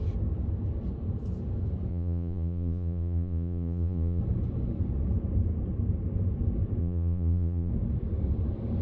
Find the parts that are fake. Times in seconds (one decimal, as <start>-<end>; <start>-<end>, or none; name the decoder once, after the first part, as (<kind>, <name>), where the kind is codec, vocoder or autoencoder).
1.9-4.2 (vocoder, Vocos); 6.8-7.7